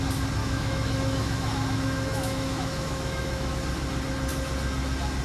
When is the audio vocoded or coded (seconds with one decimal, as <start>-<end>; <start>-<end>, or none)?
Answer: 0.4-3.5